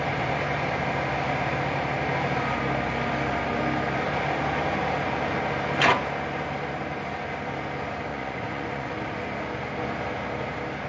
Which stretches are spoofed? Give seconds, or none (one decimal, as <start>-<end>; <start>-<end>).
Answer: 8.1-8.9